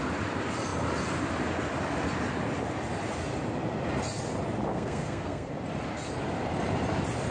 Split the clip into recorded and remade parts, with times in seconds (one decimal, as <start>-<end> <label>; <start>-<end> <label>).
0.0-4.7 recorded; 4.7-5.5 remade; 5.5-7.3 recorded